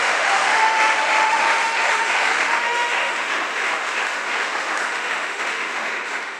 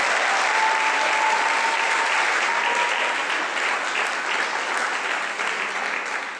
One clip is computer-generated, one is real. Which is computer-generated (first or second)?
first